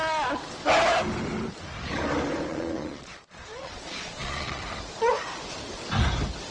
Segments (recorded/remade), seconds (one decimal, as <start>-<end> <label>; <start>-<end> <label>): 0.0-2.5 recorded; 2.5-4.6 remade; 4.6-6.5 recorded